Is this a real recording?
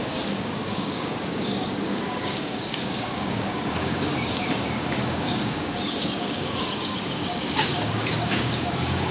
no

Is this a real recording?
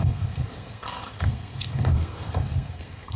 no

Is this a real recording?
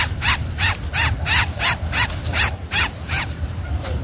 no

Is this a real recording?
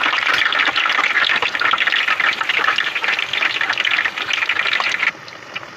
yes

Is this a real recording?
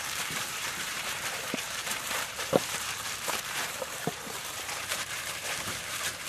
no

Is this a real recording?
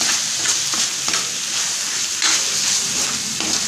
yes